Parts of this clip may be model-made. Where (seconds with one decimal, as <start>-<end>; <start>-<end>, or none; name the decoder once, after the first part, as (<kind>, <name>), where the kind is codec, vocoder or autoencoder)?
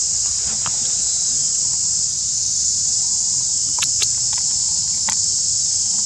0.0-2.4 (vocoder, BigVGAN v2); 3.5-6.1